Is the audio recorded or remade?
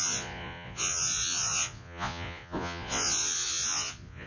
remade